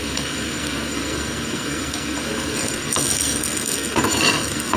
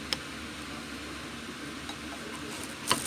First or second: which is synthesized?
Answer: first